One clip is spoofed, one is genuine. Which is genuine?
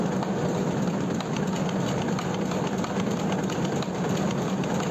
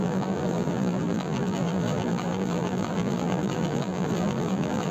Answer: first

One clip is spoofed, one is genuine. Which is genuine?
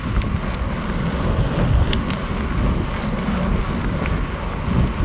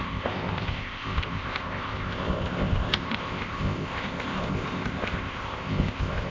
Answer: first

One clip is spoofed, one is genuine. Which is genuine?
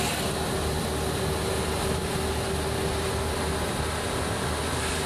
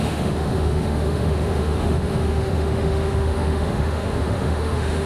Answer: first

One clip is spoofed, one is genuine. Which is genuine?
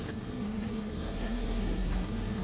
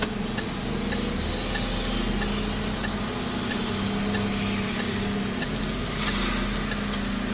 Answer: second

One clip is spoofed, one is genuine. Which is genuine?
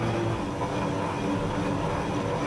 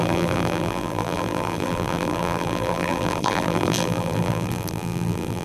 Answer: first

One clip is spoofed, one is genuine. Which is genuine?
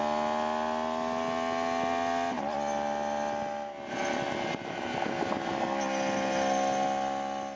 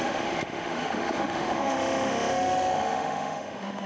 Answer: first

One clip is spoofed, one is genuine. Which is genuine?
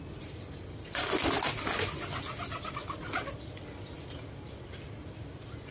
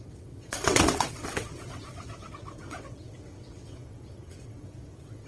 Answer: first